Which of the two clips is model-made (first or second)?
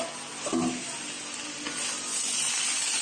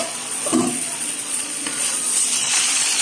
second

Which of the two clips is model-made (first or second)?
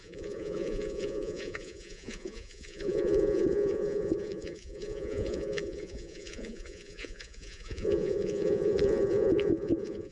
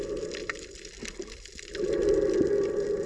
first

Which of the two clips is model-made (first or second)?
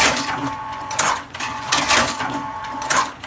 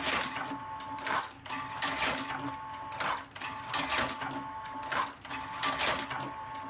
first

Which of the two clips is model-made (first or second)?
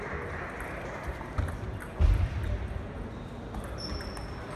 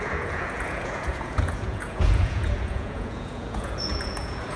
second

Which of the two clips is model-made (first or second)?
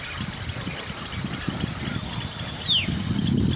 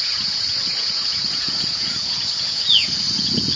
second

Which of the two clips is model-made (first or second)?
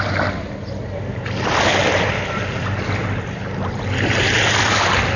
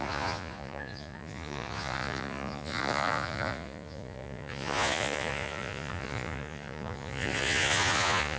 second